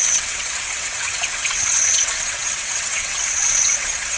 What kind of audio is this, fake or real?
fake